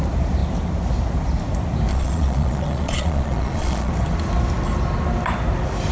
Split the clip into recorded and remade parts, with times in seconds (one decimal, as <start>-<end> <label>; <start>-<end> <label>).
0.0-1.9 recorded; 1.9-3.9 remade; 3.9-5.9 recorded